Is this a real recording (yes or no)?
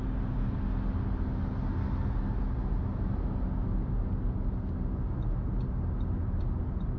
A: yes